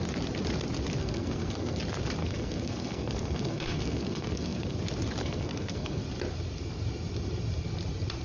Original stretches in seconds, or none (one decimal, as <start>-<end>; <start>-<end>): 0.0-1.0; 1.8-2.2; 4.8-5.2; 6.0-8.2